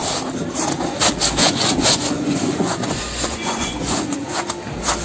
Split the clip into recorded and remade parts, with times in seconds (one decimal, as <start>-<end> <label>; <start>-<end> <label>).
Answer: 0.0-1.4 recorded; 1.4-4.4 remade; 4.4-5.0 recorded